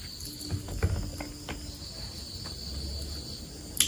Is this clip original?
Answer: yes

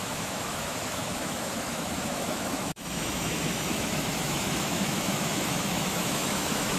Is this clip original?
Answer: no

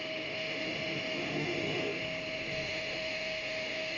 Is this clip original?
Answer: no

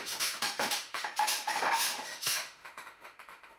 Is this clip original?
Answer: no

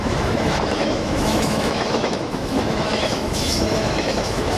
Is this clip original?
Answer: no